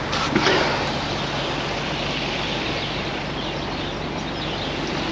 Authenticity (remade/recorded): recorded